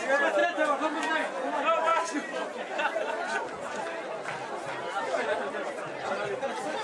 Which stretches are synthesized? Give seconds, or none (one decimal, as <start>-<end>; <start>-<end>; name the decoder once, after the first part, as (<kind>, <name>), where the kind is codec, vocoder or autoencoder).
0.4-1.0 (vocoder, BigVGAN v2); 1.9-3.4